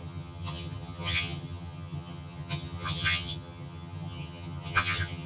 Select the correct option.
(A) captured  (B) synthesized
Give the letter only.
B